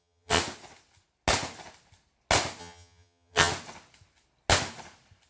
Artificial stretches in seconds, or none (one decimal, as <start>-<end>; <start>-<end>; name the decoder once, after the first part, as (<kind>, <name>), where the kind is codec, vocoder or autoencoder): 0.0-0.4 (vocoder, HiFi-GAN); 2.6-3.5

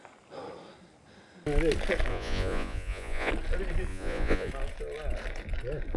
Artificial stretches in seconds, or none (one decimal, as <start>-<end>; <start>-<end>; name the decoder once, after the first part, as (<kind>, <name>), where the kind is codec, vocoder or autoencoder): 2.1-3.3 (vocoder, Vocos); 3.9-4.5

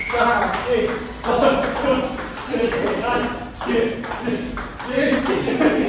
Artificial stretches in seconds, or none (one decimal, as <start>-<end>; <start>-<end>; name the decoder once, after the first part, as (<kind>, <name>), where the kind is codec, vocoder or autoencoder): none

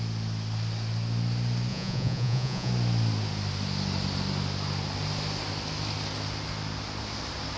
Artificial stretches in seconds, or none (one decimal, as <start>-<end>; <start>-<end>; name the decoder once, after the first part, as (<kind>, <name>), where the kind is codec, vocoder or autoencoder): 1.7-2.7 (vocoder, Vocos)

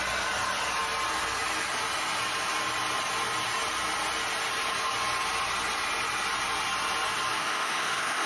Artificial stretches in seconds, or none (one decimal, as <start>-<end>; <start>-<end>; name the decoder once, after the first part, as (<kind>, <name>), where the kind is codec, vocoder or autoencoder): 7.4-8.3 (autoencoder, DAC-VAE)

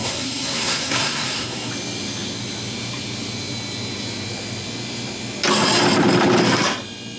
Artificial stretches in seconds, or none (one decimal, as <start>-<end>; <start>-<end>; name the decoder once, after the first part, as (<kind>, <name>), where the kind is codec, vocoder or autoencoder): 0.0-1.7 (codec, SNAC)